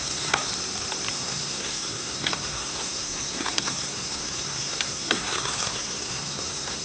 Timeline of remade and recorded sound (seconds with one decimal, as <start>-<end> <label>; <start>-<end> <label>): 0.0-0.5 remade; 0.5-1.1 recorded; 1.1-6.8 remade